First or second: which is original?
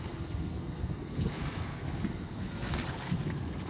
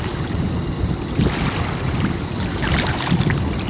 second